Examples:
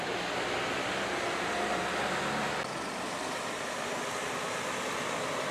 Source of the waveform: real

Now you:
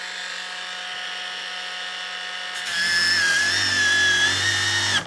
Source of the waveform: real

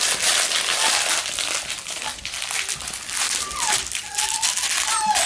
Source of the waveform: real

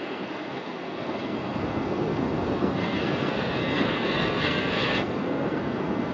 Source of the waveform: fake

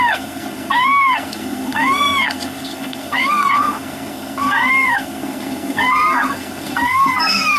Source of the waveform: fake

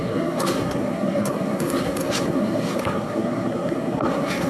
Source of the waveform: fake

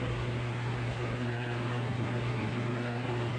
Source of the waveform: fake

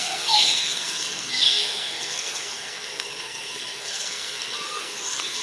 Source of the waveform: fake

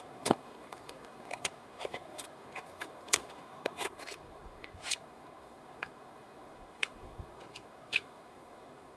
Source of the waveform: fake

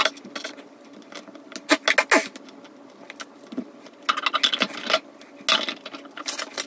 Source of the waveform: real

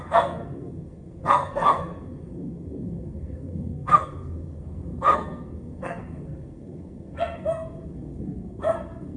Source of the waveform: fake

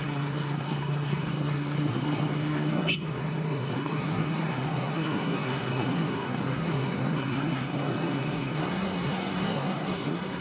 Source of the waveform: fake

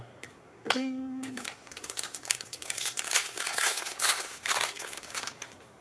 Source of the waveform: fake